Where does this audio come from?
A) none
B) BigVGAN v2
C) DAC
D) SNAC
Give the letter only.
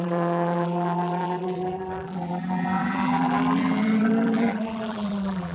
B